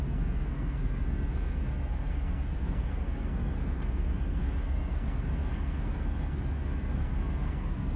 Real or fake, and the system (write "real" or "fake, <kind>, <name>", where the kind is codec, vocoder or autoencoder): fake, codec, SNAC